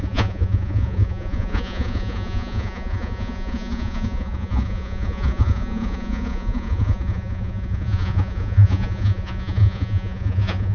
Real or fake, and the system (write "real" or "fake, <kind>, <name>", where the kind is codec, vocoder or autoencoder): fake, vocoder, Vocos